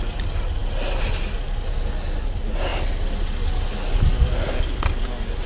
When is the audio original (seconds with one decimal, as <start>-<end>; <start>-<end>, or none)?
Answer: 0.0-5.5